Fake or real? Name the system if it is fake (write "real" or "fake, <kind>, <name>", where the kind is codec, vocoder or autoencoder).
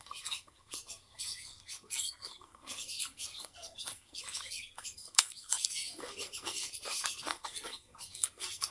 fake, codec, SNAC